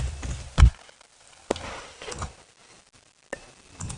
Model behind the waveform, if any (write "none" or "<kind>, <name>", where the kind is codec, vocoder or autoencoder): none